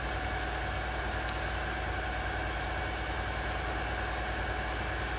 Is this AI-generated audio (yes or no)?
no